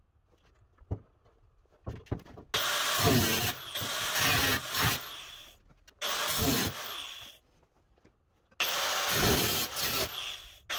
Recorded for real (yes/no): yes